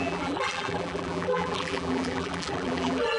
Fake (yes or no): yes